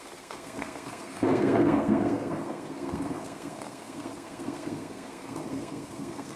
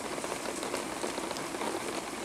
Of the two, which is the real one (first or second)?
second